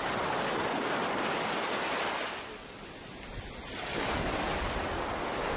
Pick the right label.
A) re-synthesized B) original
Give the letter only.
B